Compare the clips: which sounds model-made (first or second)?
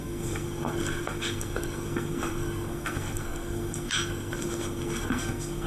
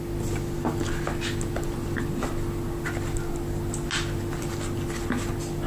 first